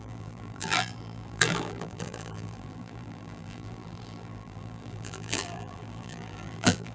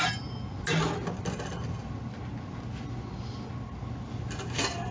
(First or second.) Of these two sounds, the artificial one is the first